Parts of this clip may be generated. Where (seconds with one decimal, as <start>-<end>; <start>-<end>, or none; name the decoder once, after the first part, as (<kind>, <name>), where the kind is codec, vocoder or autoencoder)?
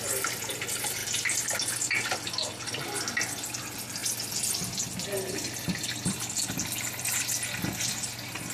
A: none